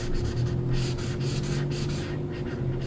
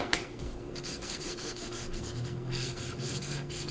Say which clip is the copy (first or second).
second